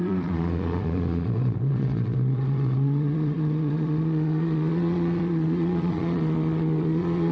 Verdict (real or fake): fake